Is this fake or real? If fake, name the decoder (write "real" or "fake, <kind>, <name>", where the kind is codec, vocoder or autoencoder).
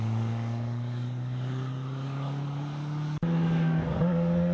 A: fake, codec, DAC